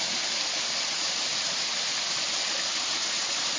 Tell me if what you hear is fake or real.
real